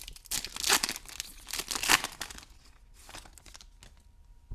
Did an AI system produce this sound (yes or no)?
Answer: no